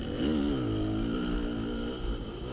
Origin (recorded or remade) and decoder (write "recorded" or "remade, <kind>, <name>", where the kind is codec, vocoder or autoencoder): recorded